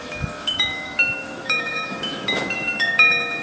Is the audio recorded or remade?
remade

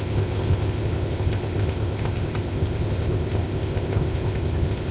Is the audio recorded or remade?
remade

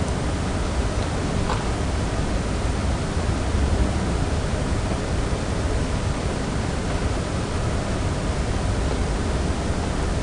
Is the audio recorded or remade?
recorded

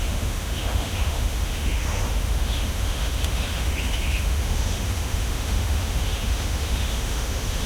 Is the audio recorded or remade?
remade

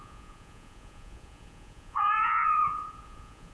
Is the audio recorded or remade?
remade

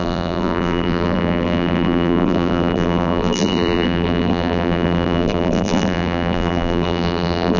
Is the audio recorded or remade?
remade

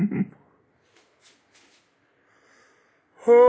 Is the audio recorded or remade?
recorded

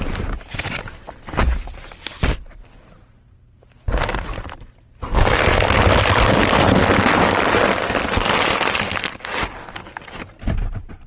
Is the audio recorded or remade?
recorded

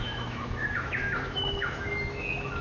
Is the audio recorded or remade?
remade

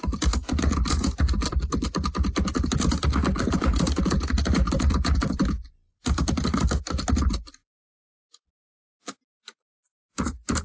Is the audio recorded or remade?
recorded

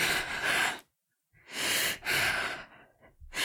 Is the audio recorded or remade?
recorded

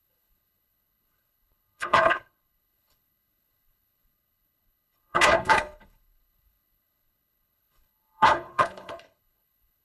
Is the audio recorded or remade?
remade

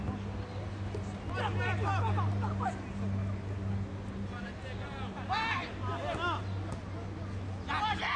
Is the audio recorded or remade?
recorded